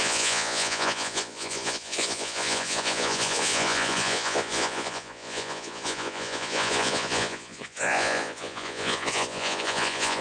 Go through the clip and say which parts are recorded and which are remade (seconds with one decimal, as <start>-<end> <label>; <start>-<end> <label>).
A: 0.0-10.2 remade